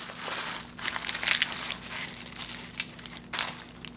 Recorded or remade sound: recorded